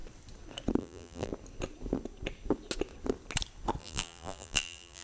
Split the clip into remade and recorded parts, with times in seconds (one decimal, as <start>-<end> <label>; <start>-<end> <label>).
0.0-0.8 recorded; 0.8-1.3 remade; 1.3-3.8 recorded; 3.8-5.0 remade